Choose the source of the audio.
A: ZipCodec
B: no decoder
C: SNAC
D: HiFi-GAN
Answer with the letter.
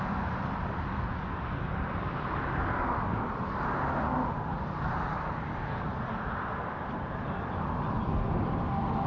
B